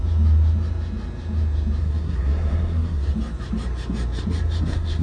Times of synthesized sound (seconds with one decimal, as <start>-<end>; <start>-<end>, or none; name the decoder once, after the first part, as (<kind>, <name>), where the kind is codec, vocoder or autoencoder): 1.8-3.1 (codec, SNAC); 4.6-5.0